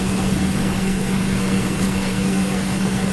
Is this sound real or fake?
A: fake